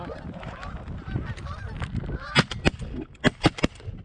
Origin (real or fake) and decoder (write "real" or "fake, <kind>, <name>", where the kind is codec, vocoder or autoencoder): real